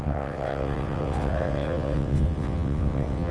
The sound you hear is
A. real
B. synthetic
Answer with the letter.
B